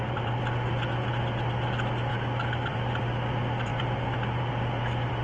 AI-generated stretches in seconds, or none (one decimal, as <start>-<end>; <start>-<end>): none